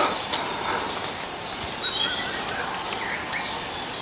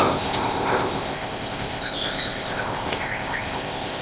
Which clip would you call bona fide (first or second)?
first